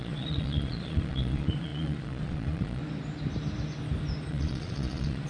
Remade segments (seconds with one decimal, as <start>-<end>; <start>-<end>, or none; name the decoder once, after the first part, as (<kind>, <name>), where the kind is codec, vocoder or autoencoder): 0.0-2.8 (vocoder, Vocos); 4.3-5.3